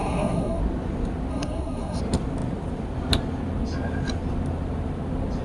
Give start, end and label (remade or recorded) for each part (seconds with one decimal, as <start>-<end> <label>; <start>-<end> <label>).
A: 0.0-0.6 remade; 0.6-1.3 recorded; 1.3-2.0 remade; 2.0-5.4 recorded